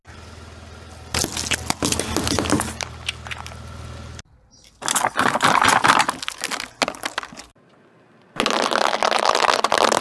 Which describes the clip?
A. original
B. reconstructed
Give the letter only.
A